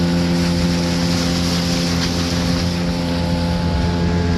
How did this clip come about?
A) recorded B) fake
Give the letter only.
A